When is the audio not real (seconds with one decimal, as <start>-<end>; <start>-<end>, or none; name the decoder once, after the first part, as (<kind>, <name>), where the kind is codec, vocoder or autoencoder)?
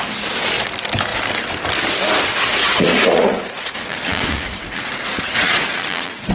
2.6-6.3 (vocoder, Vocos)